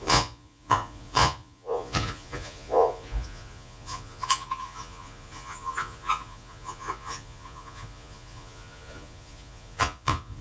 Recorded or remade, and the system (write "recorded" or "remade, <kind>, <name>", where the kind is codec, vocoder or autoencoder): remade, vocoder, Vocos